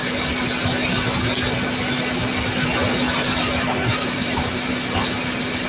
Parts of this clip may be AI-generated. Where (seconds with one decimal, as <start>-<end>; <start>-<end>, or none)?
4.0-4.5